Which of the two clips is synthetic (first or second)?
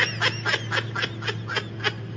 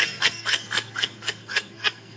second